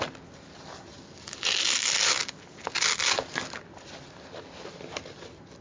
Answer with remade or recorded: recorded